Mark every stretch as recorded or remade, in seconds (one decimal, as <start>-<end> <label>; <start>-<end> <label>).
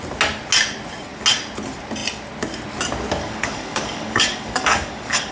0.0-3.2 recorded; 3.2-5.3 remade